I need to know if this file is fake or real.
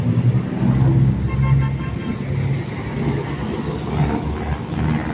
real